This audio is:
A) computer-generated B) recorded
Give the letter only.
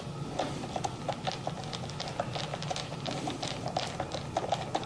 B